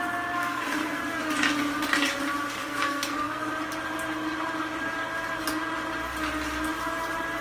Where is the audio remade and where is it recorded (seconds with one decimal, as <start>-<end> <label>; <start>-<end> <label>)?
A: 0.0-0.4 recorded; 0.4-1.0 remade; 1.0-2.6 recorded; 2.6-3.5 remade; 3.5-7.4 recorded